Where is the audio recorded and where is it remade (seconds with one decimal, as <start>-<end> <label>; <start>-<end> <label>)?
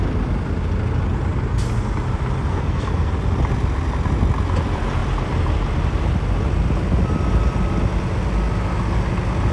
0.0-2.5 recorded; 2.5-3.1 remade; 3.1-9.5 recorded